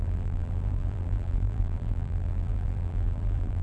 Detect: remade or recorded remade